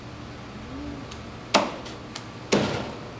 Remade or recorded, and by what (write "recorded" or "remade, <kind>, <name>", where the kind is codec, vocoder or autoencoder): recorded